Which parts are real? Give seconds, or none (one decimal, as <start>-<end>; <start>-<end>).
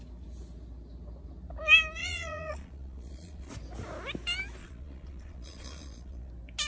0.0-2.0; 3.5-4.6; 6.3-6.7